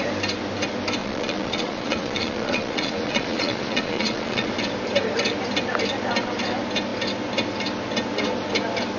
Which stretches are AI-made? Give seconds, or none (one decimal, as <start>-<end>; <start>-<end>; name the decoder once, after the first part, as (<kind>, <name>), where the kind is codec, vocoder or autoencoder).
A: 1.0-4.5 (vocoder, Vocos)